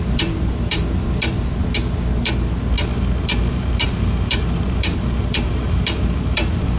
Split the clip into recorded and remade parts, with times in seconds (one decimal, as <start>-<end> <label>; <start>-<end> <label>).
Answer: 0.0-1.6 remade; 1.6-3.5 recorded; 3.5-6.8 remade